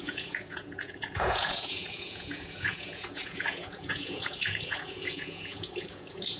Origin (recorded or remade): remade